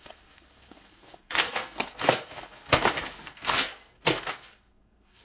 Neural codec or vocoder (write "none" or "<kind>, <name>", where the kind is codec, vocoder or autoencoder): codec, SNAC